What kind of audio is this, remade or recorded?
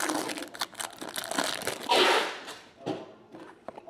recorded